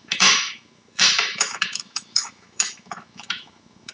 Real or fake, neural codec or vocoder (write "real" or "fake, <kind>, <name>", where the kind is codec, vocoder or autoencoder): fake, autoencoder, DAC-VAE